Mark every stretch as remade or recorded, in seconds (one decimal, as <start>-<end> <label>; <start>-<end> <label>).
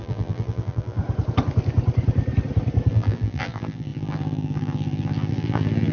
0.0-1.0 remade; 1.0-2.9 recorded; 2.9-5.9 remade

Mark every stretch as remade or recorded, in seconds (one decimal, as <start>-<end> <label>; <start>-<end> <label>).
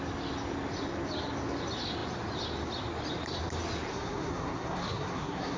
0.0-3.9 recorded; 3.9-5.6 remade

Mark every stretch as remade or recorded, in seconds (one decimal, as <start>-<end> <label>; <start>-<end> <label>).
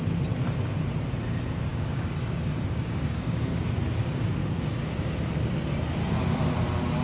0.0-1.7 recorded; 1.7-3.6 remade; 3.6-4.4 recorded; 4.4-5.1 remade; 5.1-7.0 recorded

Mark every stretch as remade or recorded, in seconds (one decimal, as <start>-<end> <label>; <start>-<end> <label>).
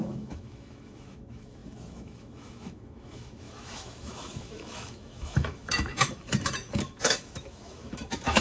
0.0-8.4 remade